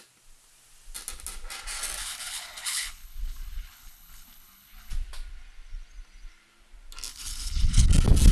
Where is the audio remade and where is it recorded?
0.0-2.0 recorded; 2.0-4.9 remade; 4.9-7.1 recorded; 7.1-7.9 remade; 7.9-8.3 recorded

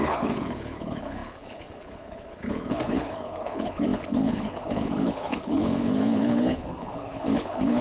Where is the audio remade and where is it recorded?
0.0-7.8 remade